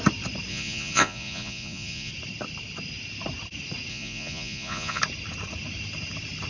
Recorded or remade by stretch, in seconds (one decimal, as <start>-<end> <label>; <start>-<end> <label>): 0.0-0.5 recorded; 0.5-2.1 remade; 2.1-3.9 recorded; 3.9-5.0 remade; 5.0-6.5 recorded